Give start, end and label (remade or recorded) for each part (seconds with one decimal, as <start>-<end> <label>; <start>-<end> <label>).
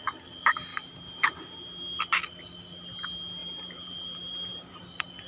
0.0-0.7 recorded; 0.7-1.4 remade; 1.4-3.4 recorded; 3.4-4.8 remade; 4.8-5.3 recorded